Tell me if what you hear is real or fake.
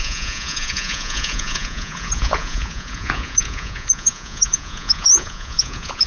fake